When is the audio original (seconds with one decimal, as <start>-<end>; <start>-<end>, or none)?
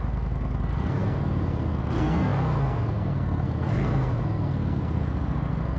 none